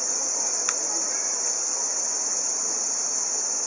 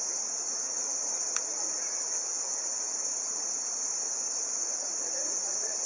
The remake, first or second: second